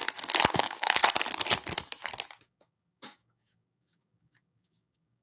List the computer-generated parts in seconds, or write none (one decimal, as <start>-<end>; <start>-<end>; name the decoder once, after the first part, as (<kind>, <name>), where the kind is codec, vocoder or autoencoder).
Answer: 0.5-1.0 (codec, DAC); 2.4-5.2